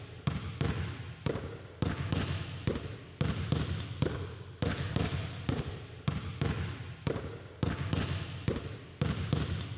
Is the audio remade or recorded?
recorded